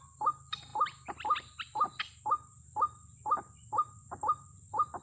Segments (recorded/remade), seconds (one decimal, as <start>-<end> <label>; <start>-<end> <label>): 0.0-5.0 recorded